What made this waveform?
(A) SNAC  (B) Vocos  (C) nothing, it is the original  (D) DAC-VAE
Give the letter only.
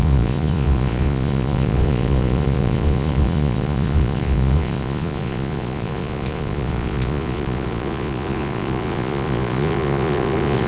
B